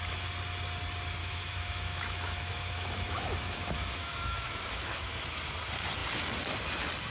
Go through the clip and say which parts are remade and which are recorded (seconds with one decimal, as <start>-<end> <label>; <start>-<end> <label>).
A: 0.0-1.2 recorded; 1.2-5.4 remade; 5.4-7.1 recorded